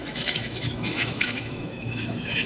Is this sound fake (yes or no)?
yes